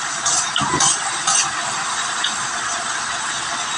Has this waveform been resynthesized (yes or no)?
no